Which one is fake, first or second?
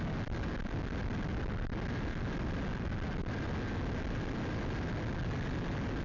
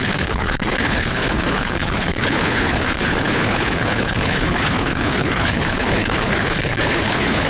second